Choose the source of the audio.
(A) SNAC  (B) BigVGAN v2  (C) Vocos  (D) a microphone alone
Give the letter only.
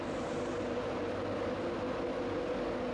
D